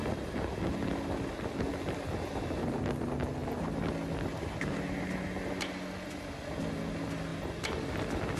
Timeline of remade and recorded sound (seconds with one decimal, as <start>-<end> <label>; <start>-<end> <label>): 0.0-8.4 recorded